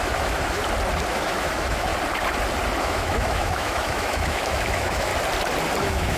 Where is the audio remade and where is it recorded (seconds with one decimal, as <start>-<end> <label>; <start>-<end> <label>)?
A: 0.0-0.6 remade; 0.6-1.1 recorded; 1.1-1.9 remade; 1.9-2.8 recorded; 2.8-5.1 remade; 5.1-5.8 recorded; 5.8-6.2 remade